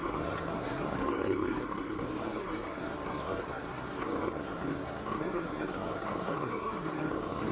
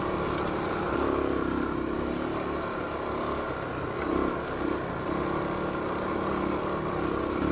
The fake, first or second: first